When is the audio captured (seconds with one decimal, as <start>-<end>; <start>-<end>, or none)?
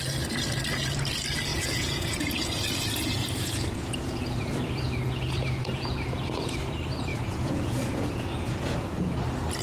0.0-1.5; 6.6-7.1; 9.1-9.6